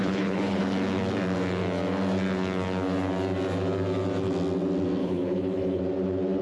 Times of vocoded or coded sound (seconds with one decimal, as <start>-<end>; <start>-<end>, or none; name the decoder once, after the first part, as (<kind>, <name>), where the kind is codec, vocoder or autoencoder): 0.0-0.6 (codec, HILCodec); 5.0-5.8